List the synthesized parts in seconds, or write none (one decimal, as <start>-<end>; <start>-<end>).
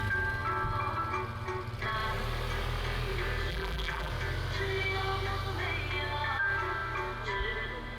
3.5-4.1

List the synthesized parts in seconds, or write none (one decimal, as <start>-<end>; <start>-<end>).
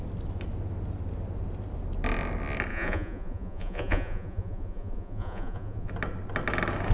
2.7-5.9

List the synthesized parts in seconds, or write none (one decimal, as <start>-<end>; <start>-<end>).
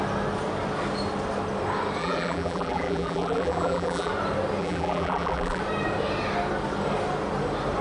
2.0-4.1; 4.6-5.6